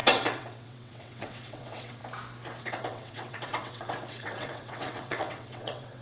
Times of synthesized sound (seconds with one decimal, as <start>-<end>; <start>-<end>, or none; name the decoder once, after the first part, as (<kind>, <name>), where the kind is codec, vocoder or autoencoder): 0.0-2.0 (vocoder, WaveNeXt); 2.6-6.0